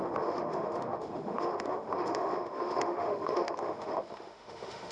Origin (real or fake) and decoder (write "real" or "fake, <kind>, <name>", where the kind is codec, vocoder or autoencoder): fake, autoencoder, DAC-VAE